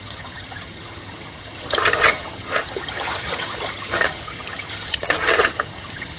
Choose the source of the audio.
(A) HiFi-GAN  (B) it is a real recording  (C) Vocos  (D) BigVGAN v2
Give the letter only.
A